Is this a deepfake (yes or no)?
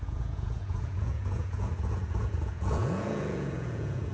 yes